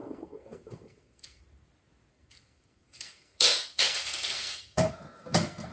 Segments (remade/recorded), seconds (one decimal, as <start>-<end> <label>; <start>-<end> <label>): 0.0-1.4 remade; 1.4-2.1 recorded; 2.1-5.7 remade